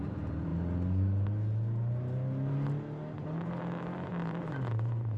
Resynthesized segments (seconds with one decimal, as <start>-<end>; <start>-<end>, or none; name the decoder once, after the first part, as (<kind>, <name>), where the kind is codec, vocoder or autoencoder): none